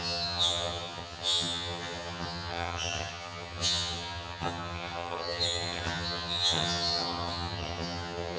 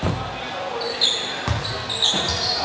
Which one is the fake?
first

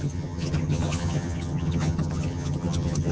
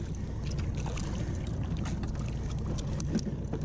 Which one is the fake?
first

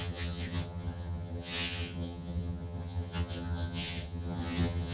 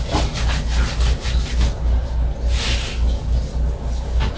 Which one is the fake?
first